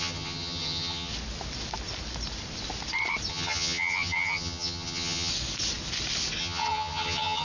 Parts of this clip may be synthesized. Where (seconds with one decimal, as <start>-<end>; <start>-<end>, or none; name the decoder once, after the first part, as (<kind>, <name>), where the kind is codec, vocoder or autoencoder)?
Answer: 0.0-1.1 (vocoder, HiFi-GAN); 3.3-5.3; 6.4-7.4